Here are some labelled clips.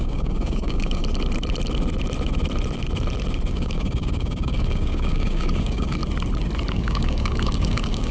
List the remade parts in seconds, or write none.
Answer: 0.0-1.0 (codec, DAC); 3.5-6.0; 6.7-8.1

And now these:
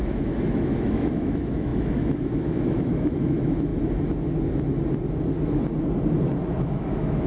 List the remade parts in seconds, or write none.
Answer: 0.0-3.7 (autoencoder, DAC-VAE); 6.6-7.3

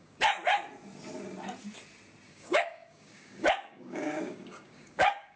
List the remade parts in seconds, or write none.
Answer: 0.0-0.4 (codec, DAC); 2.3-5.4

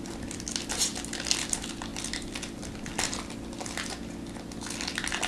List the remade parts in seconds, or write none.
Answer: 1.9-3.1 (vocoder, BigVGAN v2)

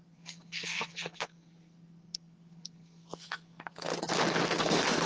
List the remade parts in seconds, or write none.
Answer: 0.0-3.9 (codec, SNAC); 4.6-5.1

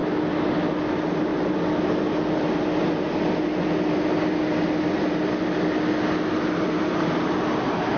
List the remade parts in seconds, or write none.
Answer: none